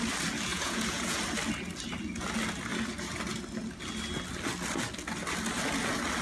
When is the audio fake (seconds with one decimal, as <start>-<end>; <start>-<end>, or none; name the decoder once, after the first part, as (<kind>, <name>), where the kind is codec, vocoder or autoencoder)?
0.5-1.2 (vocoder, Vocos)